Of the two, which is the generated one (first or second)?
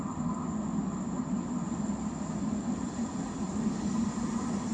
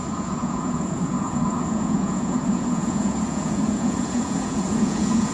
second